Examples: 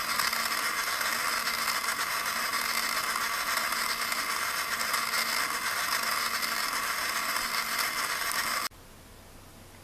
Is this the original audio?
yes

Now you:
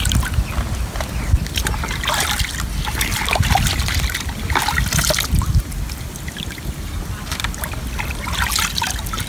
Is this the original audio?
yes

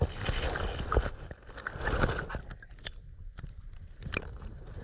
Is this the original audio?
yes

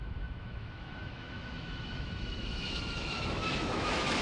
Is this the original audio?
no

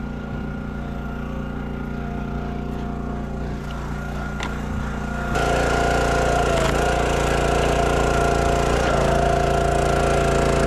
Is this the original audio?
yes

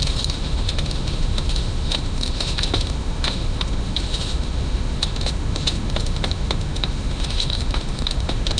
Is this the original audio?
no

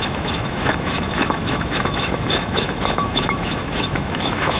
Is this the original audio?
no